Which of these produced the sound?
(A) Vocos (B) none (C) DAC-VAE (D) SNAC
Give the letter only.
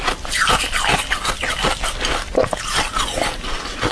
B